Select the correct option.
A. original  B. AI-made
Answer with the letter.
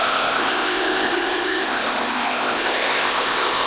B